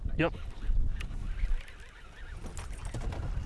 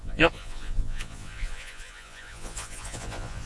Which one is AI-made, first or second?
second